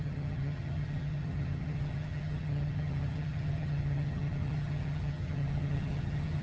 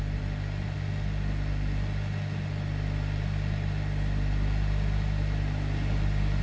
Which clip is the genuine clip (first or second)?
second